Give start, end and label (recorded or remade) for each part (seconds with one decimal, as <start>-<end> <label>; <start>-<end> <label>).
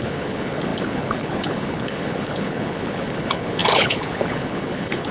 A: 0.0-5.1 remade